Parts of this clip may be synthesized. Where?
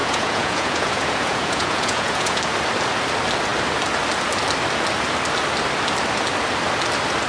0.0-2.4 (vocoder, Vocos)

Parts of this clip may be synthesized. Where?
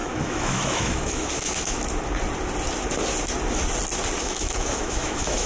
0.0-1.8 (autoencoder, DAC-VAE); 4.2-5.5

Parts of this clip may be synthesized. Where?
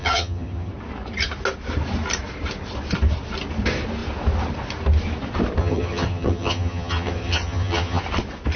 0.0-0.7 (vocoder, HiFi-GAN); 5.6-8.0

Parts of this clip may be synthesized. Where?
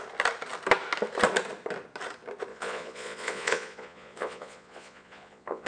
2.5-5.7 (vocoder, Vocos)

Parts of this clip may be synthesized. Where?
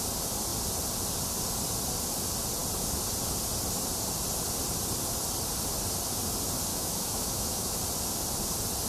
6.7-7.8 (autoencoder, DAC-VAE)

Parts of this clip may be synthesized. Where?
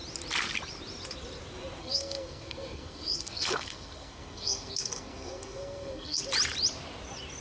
1.8-6.2 (codec, SNAC)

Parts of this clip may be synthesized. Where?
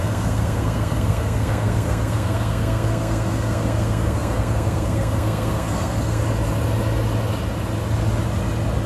0.0-6.2 (codec, SNAC)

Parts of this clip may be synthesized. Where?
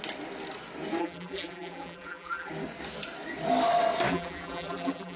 1.0-2.5 (vocoder, BigVGAN v2); 4.1-5.2